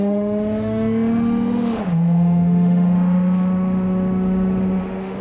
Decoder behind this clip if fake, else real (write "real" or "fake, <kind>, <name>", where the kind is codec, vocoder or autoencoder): fake, autoencoder, DAC-VAE